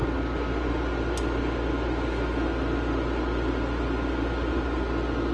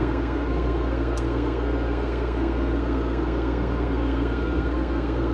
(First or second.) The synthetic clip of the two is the second